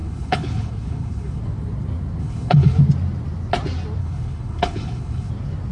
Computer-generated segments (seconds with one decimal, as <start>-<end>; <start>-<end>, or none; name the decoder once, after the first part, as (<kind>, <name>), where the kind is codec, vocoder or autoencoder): 0.0-1.4 (codec, HILCodec); 2.2-2.8; 4.0-5.3

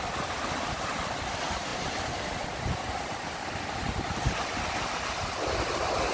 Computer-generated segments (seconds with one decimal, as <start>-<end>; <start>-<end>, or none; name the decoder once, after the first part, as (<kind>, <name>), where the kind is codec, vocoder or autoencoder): none

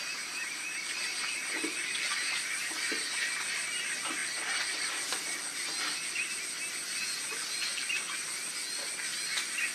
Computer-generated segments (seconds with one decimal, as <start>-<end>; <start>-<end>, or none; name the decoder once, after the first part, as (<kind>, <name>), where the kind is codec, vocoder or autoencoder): none

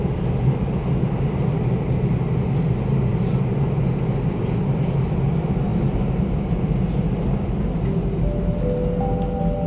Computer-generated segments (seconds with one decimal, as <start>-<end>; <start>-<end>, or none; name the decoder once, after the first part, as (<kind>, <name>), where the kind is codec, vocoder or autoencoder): none

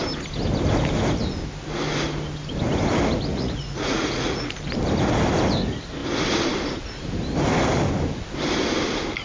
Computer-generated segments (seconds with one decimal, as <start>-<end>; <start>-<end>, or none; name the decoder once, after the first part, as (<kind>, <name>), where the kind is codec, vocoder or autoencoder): 3.3-4.5 (vocoder, Vocos)

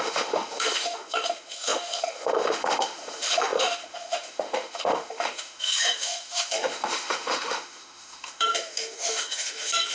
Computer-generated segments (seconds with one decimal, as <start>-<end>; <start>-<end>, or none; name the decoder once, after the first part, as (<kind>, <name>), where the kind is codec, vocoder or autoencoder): 0.0-9.9 (autoencoder, DAC-VAE)

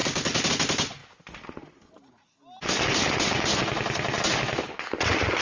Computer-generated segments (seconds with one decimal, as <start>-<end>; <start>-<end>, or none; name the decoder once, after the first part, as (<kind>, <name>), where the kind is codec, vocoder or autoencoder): none